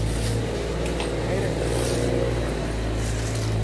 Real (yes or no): yes